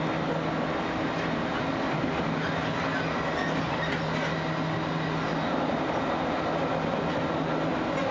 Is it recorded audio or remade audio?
recorded